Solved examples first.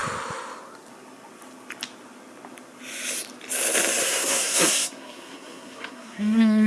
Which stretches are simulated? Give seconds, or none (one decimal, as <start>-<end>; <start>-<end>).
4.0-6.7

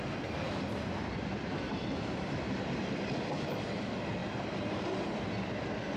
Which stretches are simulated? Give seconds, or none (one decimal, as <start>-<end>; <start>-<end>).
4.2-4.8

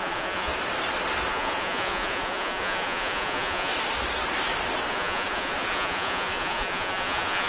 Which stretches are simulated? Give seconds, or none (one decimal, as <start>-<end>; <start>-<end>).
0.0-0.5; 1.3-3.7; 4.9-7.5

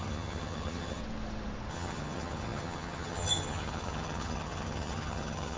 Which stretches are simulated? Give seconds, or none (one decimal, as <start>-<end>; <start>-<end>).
0.0-1.0; 1.7-5.6

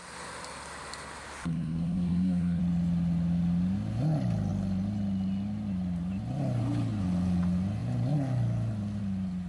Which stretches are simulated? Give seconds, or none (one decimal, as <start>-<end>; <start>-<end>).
1.4-2.6